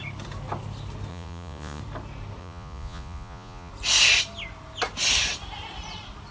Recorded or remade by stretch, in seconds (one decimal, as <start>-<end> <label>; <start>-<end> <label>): 0.0-1.1 recorded; 1.1-1.8 remade; 1.8-2.4 recorded; 2.4-3.7 remade; 3.7-6.3 recorded